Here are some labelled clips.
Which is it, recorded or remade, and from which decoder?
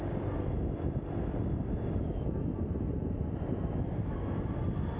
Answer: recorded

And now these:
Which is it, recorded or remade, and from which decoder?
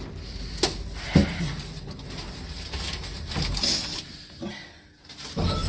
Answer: recorded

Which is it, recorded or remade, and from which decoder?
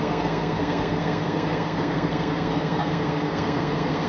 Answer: remade, codec, SNAC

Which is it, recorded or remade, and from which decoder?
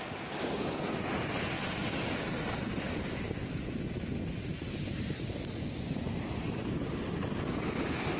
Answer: recorded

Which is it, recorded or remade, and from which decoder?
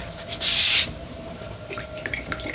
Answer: recorded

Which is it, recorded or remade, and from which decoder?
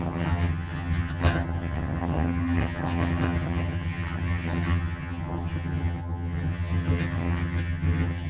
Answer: remade, vocoder, HiFi-GAN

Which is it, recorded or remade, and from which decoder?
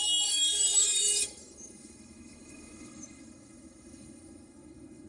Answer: remade, autoencoder, DAC-VAE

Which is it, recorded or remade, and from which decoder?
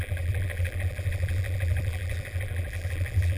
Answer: remade, vocoder, BigVGAN v2